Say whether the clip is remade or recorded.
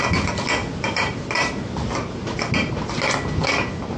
recorded